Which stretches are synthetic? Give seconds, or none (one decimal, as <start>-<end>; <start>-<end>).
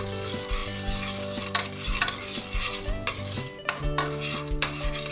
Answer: none